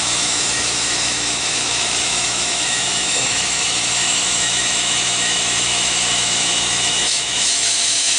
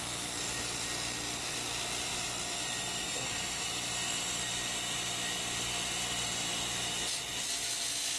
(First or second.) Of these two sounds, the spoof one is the first